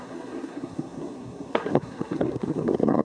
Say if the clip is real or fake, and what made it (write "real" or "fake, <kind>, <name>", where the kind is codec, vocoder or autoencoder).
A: fake, codec, SNAC